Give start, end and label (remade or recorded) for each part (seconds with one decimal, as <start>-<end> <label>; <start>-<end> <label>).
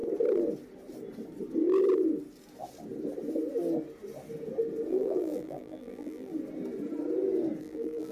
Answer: 0.0-4.9 recorded; 4.9-6.3 remade; 6.3-7.6 recorded; 7.6-8.1 remade